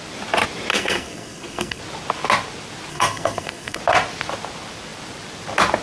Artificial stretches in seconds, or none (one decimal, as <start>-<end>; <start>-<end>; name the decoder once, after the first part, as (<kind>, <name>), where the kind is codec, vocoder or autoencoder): 0.7-1.8 (codec, SNAC); 2.9-3.8